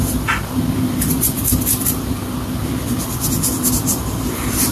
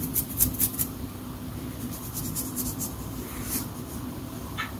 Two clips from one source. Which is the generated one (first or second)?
second